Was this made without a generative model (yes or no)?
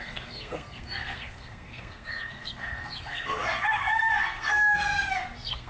no